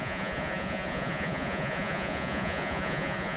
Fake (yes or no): yes